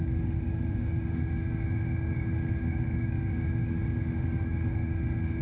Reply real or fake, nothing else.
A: fake